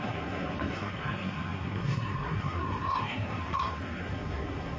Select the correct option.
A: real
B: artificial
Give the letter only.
B